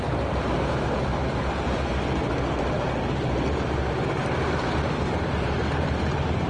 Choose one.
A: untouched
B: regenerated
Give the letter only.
B